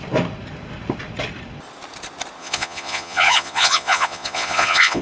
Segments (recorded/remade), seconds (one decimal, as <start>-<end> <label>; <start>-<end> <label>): 0.0-2.4 recorded; 2.4-5.0 remade